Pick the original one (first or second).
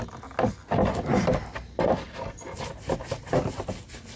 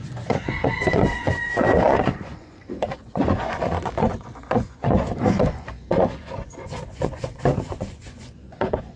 first